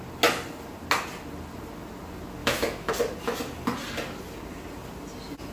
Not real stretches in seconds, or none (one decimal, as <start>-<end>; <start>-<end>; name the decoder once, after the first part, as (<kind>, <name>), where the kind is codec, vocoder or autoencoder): 2.4-2.9 (autoencoder, DAC-VAE)